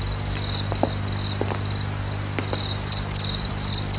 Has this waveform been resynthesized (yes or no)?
no